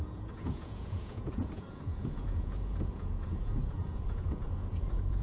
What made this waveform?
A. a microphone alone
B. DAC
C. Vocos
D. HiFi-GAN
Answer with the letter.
C